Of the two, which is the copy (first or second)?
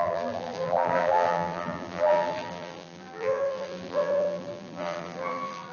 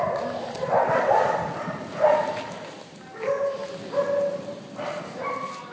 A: first